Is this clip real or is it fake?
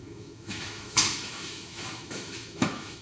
fake